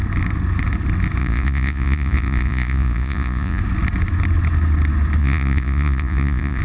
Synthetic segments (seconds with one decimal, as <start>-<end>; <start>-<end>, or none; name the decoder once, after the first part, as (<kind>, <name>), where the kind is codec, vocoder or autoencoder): 1.2-3.6 (vocoder, Vocos); 5.2-6.6